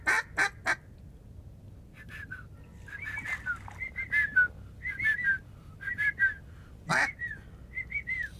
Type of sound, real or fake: real